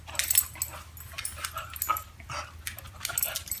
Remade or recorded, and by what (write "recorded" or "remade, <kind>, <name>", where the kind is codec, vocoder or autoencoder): recorded